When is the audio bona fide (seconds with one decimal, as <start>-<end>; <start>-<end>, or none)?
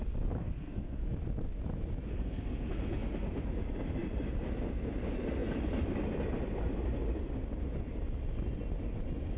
0.0-0.4; 1.0-2.1; 2.7-9.4